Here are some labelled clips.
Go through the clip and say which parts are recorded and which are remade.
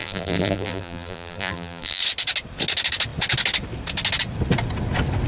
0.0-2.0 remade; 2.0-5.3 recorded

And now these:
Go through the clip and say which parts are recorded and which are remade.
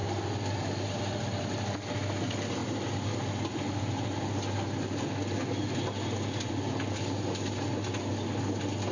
0.0-1.4 remade; 1.4-8.9 recorded